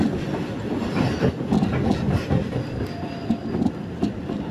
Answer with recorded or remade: recorded